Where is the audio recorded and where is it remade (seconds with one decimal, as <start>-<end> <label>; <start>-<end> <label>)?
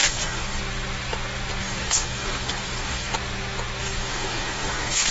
0.0-0.6 remade; 0.6-1.6 recorded; 1.6-3.1 remade; 3.1-3.8 recorded; 3.8-5.1 remade